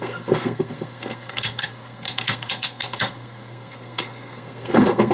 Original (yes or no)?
no